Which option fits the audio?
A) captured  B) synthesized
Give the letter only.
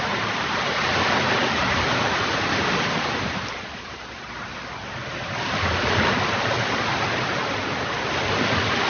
A